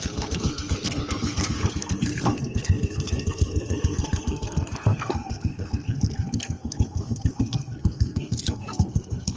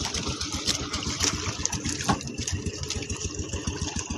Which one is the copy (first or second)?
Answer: first